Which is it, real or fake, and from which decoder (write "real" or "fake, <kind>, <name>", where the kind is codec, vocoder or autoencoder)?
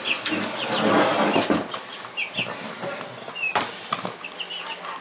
real